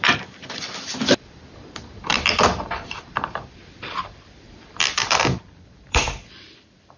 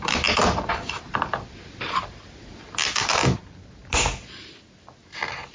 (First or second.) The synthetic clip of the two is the first